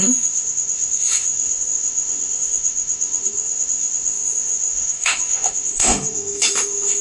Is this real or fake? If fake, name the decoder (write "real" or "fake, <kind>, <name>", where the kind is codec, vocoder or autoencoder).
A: fake, autoencoder, DAC-VAE